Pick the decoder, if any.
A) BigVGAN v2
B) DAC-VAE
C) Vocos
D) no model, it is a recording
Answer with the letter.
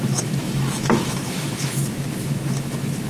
B